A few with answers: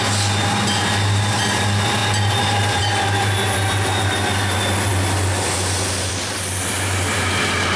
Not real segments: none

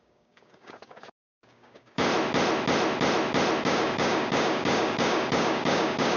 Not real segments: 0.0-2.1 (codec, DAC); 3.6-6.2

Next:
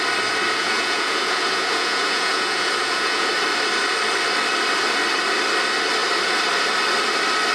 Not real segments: 0.6-3.3 (vocoder, Vocos)

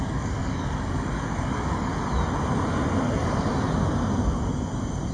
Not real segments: 0.0-1.9 (codec, DAC)